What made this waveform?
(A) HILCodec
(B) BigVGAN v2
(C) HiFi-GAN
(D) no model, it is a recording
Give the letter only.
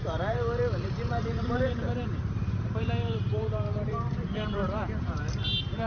B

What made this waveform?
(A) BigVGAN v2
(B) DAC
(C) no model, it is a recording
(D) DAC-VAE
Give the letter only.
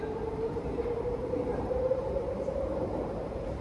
A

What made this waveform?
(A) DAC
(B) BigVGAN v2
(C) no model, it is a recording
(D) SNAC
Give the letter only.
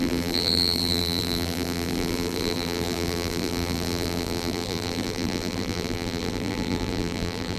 B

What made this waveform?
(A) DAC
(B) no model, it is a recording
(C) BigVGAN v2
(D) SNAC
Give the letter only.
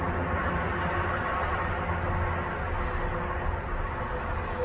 B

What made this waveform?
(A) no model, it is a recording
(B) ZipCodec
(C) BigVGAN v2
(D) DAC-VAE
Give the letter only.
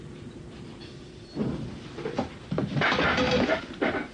C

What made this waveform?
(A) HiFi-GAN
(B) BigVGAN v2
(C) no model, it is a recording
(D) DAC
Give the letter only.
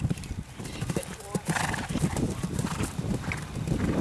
B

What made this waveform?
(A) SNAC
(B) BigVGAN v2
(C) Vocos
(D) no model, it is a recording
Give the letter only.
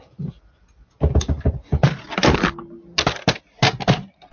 D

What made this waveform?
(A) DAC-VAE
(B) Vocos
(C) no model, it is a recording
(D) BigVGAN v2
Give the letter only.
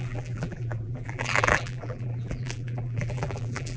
D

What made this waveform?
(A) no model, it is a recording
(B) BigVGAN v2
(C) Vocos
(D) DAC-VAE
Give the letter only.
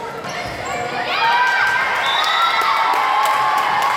A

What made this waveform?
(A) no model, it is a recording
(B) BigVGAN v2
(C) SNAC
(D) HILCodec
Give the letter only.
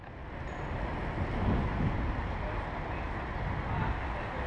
A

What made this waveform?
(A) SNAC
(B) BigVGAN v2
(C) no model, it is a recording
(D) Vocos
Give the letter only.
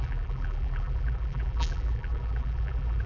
B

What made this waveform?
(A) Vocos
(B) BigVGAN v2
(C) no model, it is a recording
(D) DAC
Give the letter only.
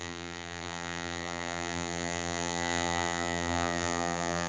B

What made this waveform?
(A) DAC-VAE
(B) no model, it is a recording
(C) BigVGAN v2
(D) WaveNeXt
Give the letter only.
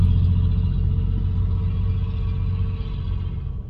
B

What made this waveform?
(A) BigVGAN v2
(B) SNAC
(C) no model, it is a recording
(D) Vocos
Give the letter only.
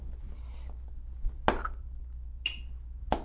C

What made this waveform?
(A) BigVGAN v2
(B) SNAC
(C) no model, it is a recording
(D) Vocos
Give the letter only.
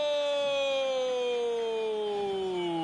C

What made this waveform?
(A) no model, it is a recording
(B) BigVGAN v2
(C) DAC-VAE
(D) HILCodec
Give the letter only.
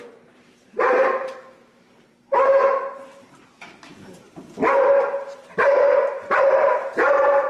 B